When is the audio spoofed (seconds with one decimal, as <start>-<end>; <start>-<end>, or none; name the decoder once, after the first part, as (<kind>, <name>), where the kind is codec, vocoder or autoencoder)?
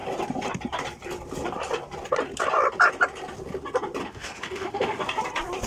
4.0-5.0 (autoencoder, DAC-VAE)